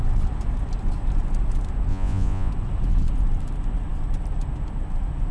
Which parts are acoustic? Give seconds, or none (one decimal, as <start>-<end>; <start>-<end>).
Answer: 0.0-1.9; 2.5-5.3